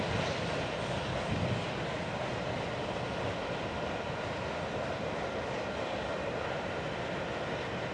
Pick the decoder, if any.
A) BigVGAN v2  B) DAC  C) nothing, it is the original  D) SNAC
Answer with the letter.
C